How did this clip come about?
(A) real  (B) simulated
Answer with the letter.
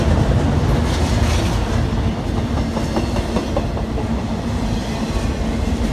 A